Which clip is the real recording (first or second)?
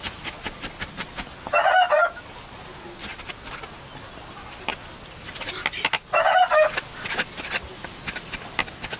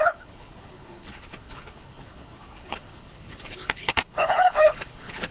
first